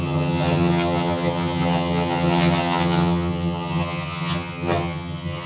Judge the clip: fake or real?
fake